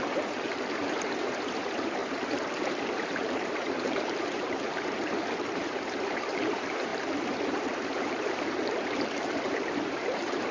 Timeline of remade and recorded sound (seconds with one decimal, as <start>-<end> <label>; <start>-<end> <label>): 0.0-10.5 remade